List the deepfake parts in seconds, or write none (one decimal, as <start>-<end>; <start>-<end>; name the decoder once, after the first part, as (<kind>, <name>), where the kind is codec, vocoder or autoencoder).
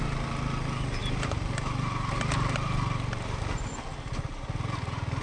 none